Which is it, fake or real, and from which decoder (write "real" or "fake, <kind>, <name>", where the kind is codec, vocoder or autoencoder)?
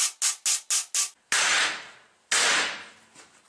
real